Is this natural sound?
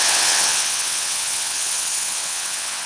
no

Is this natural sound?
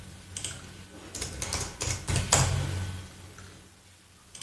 yes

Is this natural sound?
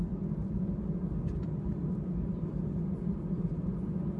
yes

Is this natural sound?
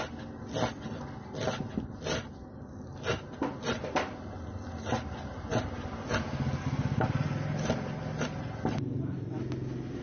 yes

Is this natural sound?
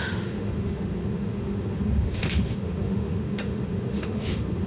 no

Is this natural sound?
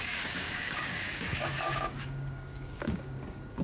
no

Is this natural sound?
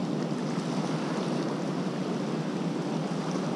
yes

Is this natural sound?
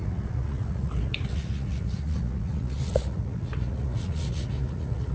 no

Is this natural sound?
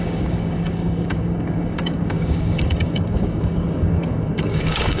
no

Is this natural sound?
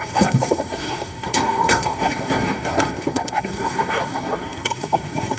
no